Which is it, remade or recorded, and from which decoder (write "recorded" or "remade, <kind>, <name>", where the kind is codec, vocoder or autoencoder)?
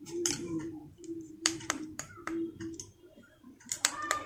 remade, vocoder, BigVGAN v2